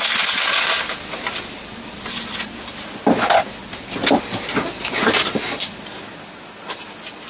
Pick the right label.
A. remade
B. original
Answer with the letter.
B